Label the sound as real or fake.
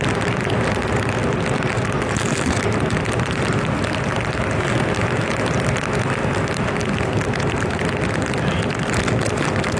real